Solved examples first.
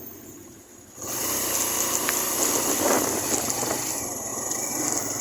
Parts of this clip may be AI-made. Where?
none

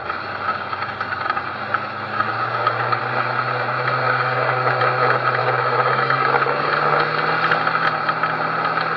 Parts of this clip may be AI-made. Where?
0.5-1.6 (codec, DAC); 2.1-3.0; 4.0-4.8; 5.4-6.7

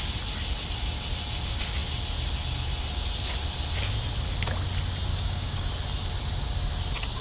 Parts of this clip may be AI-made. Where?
5.1-5.7 (codec, DAC)

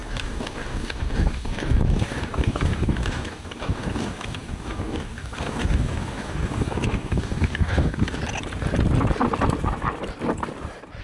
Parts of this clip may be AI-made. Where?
0.0-8.2 (codec, DAC)

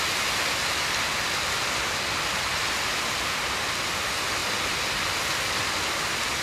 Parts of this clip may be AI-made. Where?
none